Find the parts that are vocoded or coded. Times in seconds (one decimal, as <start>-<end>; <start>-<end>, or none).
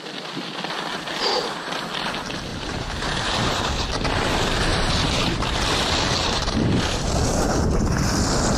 0.9-1.8; 2.5-3.9; 4.7-5.6; 6.2-7.1